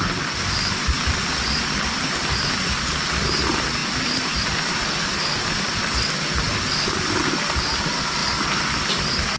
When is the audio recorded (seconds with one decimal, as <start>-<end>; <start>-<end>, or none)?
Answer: 0.0-9.4